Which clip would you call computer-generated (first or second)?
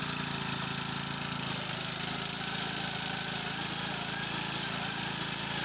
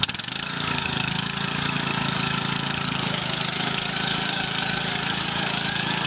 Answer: second